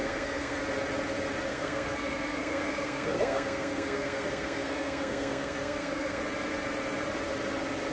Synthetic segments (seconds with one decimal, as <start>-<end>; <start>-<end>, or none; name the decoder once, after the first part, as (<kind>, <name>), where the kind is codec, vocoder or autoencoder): 0.0-0.6 (codec, SNAC); 1.5-6.2